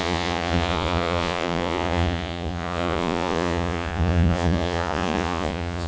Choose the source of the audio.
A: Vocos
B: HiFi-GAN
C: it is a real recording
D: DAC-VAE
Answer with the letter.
A